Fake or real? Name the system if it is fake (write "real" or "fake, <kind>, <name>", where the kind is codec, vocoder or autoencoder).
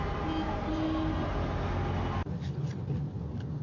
real